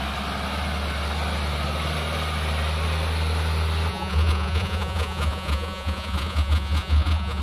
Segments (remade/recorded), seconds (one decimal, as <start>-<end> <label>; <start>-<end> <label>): 0.0-3.9 recorded; 3.9-7.4 remade